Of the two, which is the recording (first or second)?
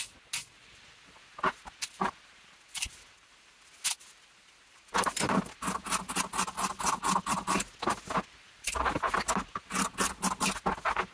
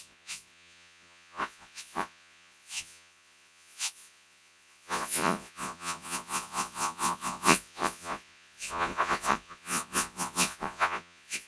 first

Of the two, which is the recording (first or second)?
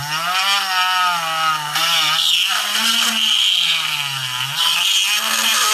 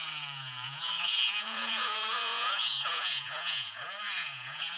first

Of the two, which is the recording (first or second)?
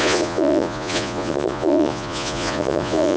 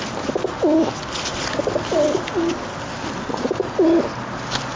second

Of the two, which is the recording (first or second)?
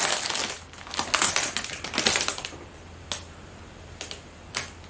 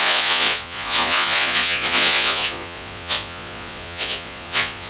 first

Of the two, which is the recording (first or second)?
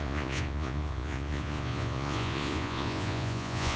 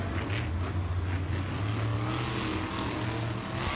second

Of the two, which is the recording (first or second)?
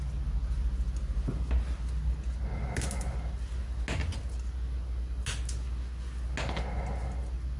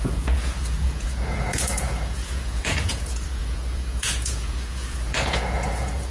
first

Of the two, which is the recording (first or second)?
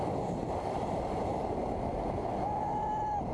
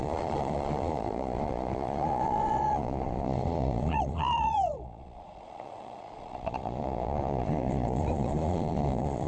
first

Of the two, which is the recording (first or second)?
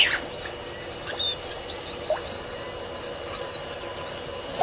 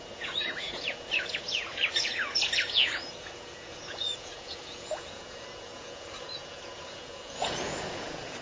first